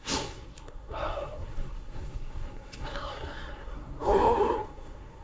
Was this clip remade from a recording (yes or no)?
yes